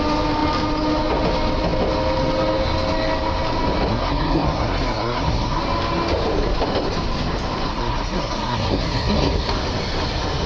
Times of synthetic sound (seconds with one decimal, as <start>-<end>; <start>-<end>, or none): 3.9-5.6; 7.7-9.5